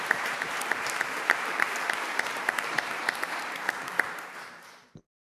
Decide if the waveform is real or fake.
fake